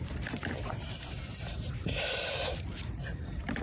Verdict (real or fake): fake